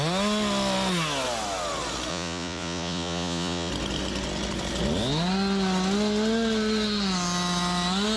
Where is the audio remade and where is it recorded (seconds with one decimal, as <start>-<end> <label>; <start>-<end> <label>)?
0.0-2.1 recorded; 2.1-3.7 remade; 3.7-8.2 recorded